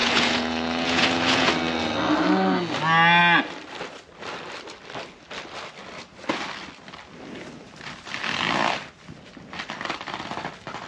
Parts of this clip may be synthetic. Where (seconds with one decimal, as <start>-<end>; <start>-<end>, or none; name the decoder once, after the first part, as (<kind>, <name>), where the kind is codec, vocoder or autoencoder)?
0.0-1.5 (vocoder, Vocos)